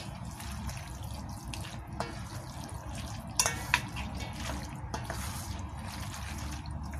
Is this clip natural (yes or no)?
yes